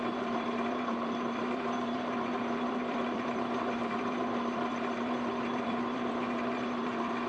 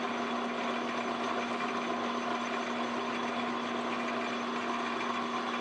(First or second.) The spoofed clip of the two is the first